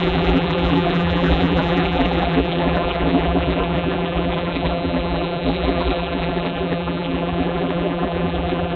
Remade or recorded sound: remade